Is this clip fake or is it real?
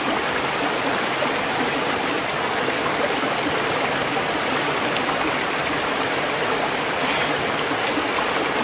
real